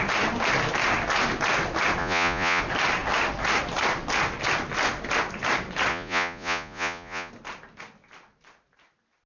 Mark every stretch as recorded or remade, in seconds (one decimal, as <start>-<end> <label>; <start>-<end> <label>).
0.0-2.0 recorded; 2.0-2.6 remade; 2.6-5.9 recorded; 5.9-7.3 remade; 7.3-9.3 recorded

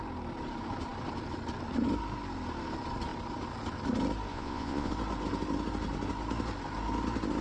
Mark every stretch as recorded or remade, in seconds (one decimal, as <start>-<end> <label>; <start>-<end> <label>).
0.0-4.3 recorded; 4.3-4.9 remade; 4.9-7.4 recorded

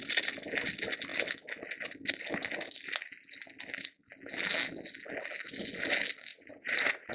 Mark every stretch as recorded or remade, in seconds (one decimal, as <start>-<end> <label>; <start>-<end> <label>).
0.0-6.3 recorded; 6.3-7.1 remade

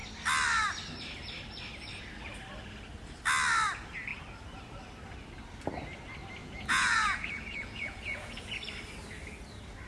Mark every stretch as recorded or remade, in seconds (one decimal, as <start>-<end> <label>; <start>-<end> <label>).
0.0-6.4 recorded; 6.4-8.6 remade; 8.6-9.9 recorded

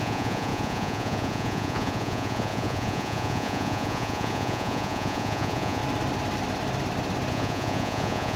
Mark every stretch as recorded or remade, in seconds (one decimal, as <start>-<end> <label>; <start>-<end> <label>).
0.0-5.8 remade; 5.8-7.3 recorded; 7.3-8.4 remade